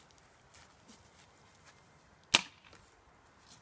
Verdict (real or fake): real